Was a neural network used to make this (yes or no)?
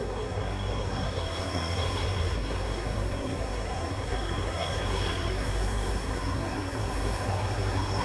yes